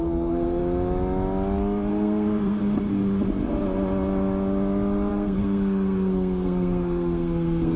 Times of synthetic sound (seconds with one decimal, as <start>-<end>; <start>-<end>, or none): 0.0-0.6; 1.9-2.6; 5.1-7.8